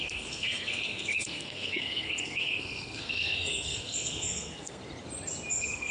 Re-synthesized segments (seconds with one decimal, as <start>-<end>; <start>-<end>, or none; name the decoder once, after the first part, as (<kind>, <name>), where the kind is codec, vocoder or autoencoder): 0.0-4.8 (codec, SNAC); 5.5-5.9